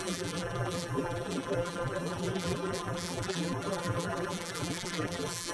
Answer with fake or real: fake